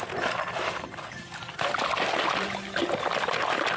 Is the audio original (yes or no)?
yes